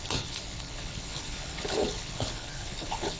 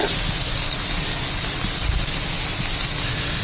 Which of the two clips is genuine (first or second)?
second